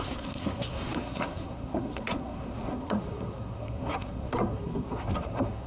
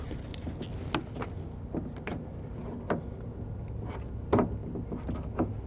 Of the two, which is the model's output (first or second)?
first